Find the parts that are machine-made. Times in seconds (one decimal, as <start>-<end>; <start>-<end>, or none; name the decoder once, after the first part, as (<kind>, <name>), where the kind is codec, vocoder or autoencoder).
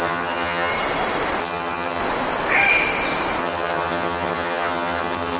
0.0-0.7 (vocoder, HiFi-GAN); 1.4-2.0; 3.4-5.4